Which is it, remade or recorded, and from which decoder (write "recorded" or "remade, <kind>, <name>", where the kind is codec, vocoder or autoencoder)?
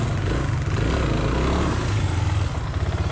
recorded